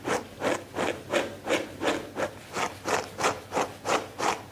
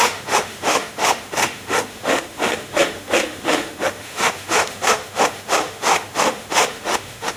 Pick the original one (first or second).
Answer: first